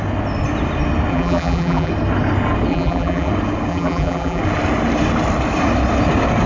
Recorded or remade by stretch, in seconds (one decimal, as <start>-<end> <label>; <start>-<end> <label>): 0.0-1.1 recorded; 1.1-1.9 remade; 1.9-2.7 recorded; 2.7-3.3 remade; 3.3-3.7 recorded; 3.7-4.4 remade; 4.4-6.5 recorded